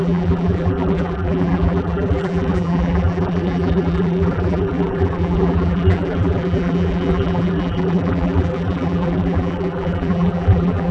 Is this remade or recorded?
remade